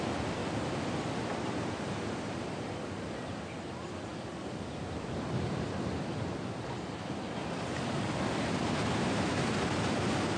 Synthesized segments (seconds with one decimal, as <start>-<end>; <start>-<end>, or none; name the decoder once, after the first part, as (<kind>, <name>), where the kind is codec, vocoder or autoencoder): 0.0-0.4 (vocoder, BigVGAN v2); 2.2-7.4; 8.9-10.4